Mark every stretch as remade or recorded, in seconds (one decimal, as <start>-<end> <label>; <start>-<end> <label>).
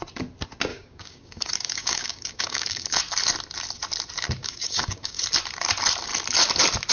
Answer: 0.0-0.7 recorded; 0.7-3.0 remade; 3.0-4.4 recorded; 4.4-5.2 remade; 5.2-6.9 recorded